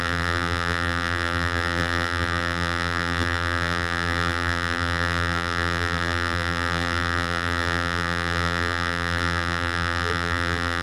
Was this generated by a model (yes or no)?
yes